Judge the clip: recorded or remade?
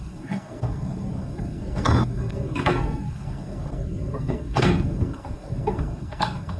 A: remade